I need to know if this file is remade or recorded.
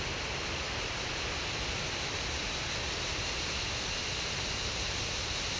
recorded